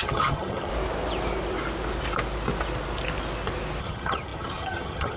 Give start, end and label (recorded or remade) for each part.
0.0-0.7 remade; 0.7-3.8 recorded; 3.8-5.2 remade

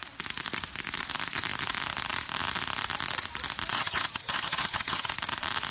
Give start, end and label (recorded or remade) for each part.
0.0-3.7 recorded; 3.7-5.1 remade; 5.1-5.7 recorded

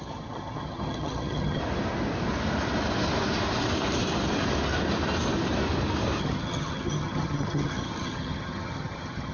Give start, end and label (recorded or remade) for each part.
0.0-1.6 remade; 1.6-6.2 recorded; 6.2-9.3 remade

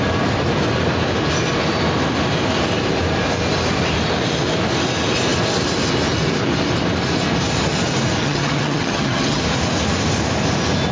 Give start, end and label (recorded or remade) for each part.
0.0-8.2 recorded; 8.2-9.4 remade; 9.4-10.9 recorded